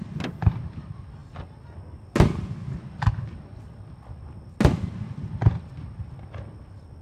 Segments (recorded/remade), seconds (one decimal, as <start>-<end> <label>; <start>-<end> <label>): 0.0-7.0 recorded